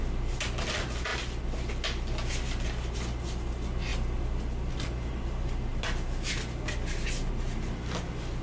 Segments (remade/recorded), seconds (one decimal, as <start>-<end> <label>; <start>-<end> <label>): 0.0-8.4 recorded